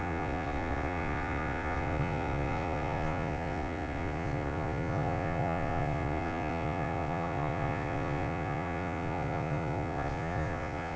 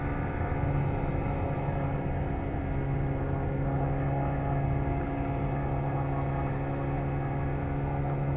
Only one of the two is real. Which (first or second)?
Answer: second